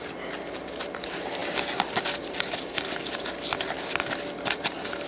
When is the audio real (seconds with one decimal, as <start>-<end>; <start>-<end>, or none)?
0.0-5.1